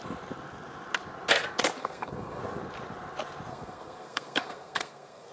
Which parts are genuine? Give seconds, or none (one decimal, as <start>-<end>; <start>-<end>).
0.0-1.8; 2.4-3.5